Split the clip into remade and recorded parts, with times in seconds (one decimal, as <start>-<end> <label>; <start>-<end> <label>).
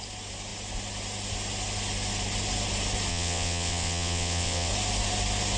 0.0-3.1 recorded; 3.1-4.7 remade; 4.7-5.6 recorded